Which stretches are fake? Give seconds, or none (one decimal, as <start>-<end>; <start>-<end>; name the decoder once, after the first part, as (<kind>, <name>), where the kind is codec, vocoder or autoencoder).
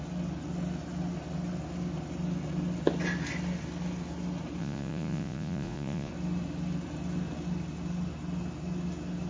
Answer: 4.6-6.1 (vocoder, Vocos)